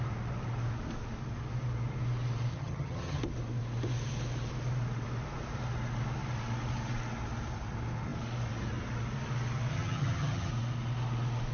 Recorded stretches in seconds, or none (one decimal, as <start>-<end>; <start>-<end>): 0.0-2.5; 3.2-9.7; 10.5-11.5